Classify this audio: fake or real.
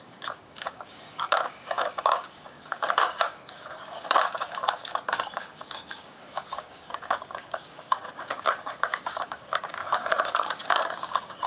fake